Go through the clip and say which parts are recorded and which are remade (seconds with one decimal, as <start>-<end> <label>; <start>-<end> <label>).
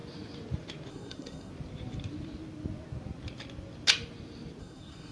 0.0-0.9 recorded; 0.9-1.5 remade; 1.5-4.6 recorded; 4.6-5.1 remade